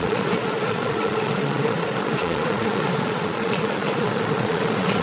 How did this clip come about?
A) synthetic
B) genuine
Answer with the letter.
A